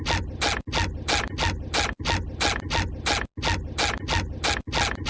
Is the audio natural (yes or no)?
yes